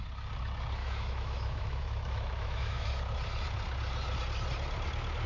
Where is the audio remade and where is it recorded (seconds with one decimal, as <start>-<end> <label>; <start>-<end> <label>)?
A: 0.0-0.8 recorded; 0.8-2.9 remade; 2.9-5.3 recorded

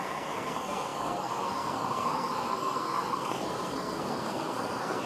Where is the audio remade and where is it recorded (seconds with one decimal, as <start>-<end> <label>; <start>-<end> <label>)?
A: 0.0-5.1 remade

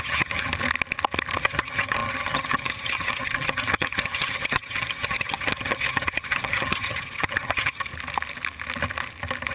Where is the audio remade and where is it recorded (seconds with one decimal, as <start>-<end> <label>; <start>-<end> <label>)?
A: 0.0-0.5 remade; 0.5-1.4 recorded; 1.4-7.9 remade; 7.9-9.5 recorded

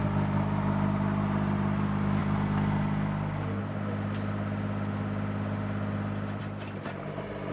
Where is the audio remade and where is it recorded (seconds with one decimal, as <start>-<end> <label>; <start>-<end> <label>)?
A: 0.0-7.5 recorded

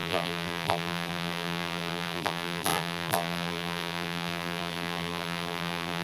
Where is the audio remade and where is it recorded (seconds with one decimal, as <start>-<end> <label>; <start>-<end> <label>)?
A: 0.0-6.0 remade

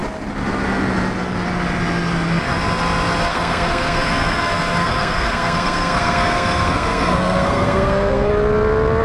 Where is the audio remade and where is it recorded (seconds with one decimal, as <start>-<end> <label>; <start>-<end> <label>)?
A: 0.0-3.3 recorded; 3.3-8.3 remade; 8.3-9.0 recorded